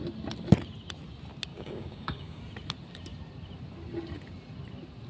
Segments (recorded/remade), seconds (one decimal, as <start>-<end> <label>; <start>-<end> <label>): 0.0-1.5 recorded; 1.5-2.4 remade; 2.4-5.1 recorded